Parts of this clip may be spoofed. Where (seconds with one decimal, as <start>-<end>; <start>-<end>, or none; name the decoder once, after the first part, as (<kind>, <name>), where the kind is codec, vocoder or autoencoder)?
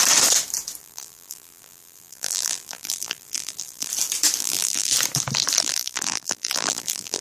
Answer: 0.8-3.9 (vocoder, BigVGAN v2); 4.4-4.9; 5.6-7.2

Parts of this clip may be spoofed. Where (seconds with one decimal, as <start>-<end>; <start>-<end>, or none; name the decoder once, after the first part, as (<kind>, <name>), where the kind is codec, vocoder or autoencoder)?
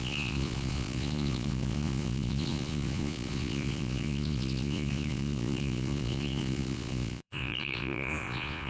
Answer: 0.0-8.7 (vocoder, Vocos)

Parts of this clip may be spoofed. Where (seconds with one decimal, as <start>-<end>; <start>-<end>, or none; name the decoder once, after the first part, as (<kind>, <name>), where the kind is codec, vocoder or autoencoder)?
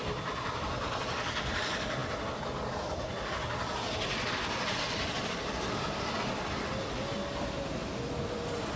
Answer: none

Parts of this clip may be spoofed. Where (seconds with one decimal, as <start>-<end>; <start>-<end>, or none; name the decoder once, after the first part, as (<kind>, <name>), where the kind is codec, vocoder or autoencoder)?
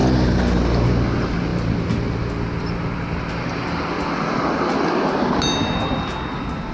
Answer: none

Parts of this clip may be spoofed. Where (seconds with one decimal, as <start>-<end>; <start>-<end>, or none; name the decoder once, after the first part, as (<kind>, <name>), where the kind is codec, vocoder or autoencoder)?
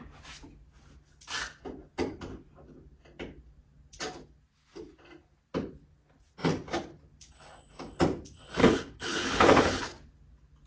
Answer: 8.6-9.9 (codec, HILCodec)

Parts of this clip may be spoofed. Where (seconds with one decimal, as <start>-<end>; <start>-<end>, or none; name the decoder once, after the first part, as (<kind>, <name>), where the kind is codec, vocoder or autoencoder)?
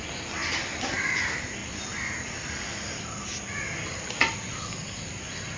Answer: none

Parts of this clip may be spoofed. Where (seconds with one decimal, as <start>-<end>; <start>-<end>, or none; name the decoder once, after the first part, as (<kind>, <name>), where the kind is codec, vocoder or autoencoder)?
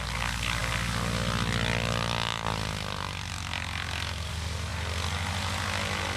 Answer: none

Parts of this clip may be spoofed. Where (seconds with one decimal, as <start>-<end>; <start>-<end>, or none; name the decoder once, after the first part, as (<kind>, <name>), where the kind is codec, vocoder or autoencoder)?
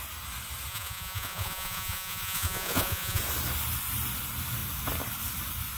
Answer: 0.7-3.2 (vocoder, Vocos)